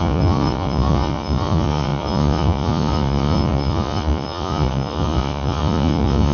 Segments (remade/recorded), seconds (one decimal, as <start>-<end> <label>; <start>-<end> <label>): 0.0-6.3 remade

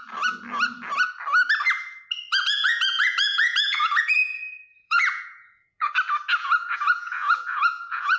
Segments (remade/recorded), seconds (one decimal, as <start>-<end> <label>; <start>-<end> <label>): 0.0-2.3 recorded; 2.3-5.9 remade; 5.9-6.4 recorded; 6.4-8.2 remade

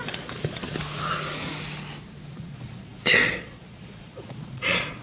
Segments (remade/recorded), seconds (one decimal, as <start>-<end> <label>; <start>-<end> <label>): 0.0-0.6 remade; 0.6-2.3 recorded; 2.3-5.0 remade

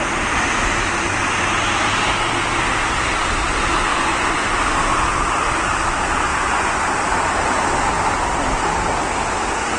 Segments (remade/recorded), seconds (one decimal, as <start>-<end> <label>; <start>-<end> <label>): 0.0-3.9 recorded; 3.9-4.5 remade; 4.5-6.3 recorded; 6.3-6.8 remade; 6.8-9.8 recorded

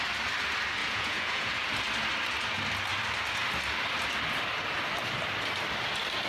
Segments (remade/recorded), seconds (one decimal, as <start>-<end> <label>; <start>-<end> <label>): 0.0-0.8 recorded; 0.8-1.7 remade; 1.7-6.3 recorded

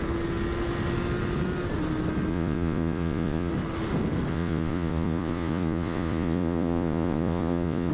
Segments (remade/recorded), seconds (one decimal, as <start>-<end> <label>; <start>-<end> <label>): 0.0-2.3 recorded; 2.3-3.5 remade; 3.5-4.3 recorded; 4.3-7.9 remade

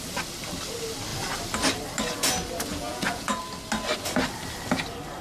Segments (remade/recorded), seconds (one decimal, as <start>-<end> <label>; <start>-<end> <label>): 0.0-2.7 recorded; 2.7-3.4 remade; 3.4-5.2 recorded

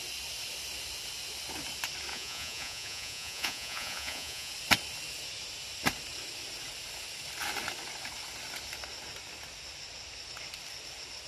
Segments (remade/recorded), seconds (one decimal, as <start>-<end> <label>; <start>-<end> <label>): 0.0-2.1 recorded; 2.1-4.5 remade; 4.5-11.3 recorded